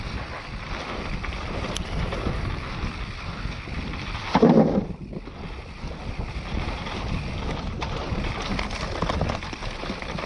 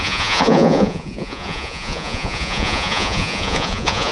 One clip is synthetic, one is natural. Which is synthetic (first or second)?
second